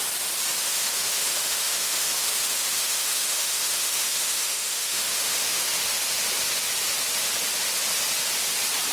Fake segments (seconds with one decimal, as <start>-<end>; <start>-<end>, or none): 0.6-5.7